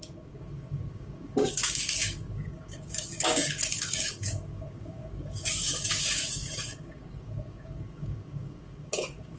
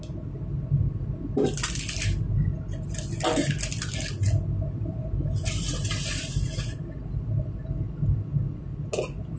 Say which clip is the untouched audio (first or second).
second